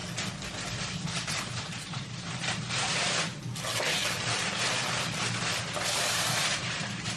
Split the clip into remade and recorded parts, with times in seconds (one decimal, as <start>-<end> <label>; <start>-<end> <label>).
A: 0.0-1.3 recorded; 1.3-3.3 remade; 3.3-5.6 recorded; 5.6-7.2 remade